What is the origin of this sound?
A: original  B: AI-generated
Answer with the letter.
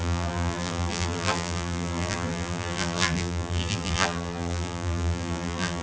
B